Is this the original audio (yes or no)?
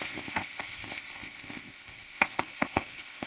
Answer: no